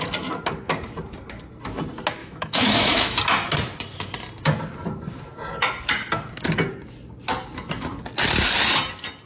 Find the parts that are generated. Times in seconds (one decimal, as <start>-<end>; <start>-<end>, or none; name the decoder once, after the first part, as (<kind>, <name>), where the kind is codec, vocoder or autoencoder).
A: 2.2-3.2 (autoencoder, DAC-VAE)